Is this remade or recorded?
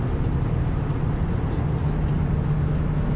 recorded